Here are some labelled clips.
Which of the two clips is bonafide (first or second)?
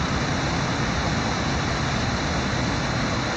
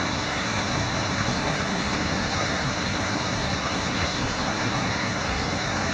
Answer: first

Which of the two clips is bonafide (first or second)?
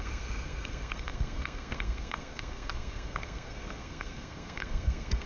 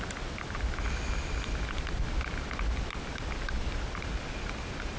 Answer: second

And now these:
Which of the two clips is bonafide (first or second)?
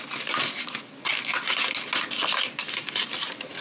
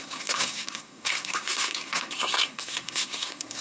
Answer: first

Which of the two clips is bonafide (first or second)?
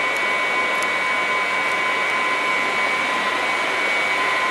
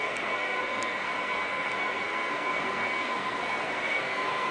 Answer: first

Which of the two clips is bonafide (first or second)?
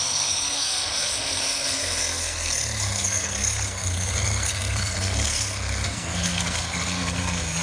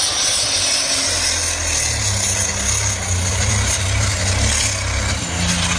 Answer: second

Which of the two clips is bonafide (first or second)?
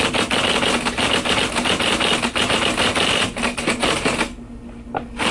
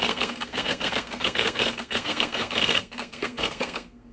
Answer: first